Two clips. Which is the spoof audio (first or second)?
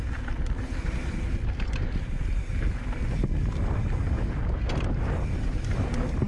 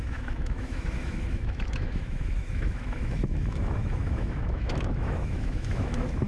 second